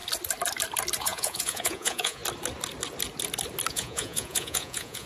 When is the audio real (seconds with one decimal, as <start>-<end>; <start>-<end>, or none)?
0.0-1.0; 2.2-3.7